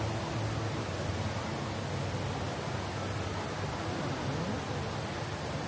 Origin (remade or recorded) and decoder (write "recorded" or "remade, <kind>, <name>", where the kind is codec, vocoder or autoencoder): recorded